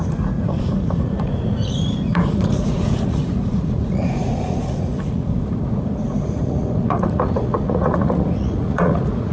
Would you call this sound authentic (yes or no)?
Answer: no